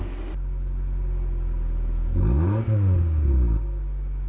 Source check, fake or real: real